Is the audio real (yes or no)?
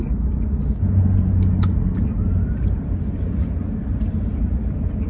yes